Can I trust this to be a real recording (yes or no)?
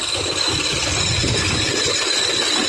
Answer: yes